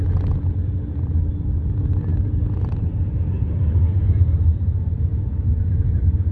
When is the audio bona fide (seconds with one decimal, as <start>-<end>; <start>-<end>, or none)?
0.0-6.3